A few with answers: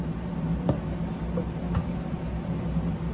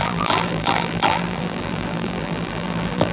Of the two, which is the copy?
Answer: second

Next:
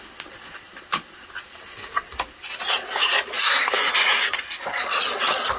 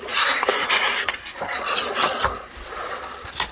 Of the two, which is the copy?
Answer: second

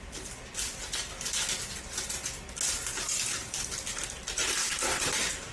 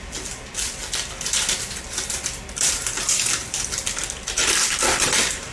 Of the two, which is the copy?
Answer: second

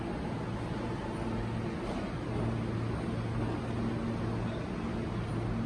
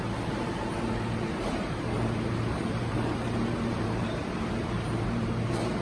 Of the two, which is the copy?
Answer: second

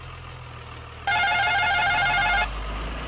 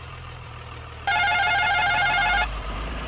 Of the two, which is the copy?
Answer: second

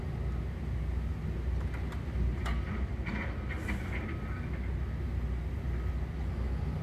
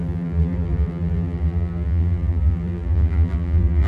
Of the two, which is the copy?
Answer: second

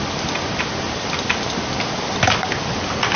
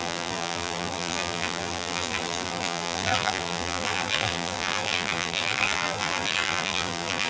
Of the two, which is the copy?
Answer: second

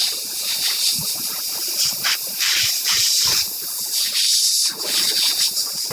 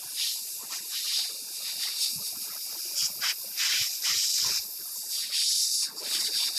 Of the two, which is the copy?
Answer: first